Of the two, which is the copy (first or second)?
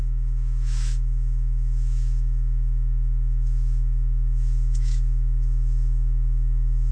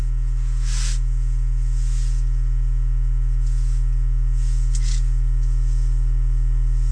first